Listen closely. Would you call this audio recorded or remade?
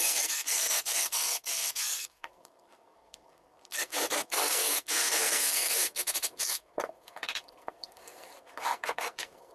remade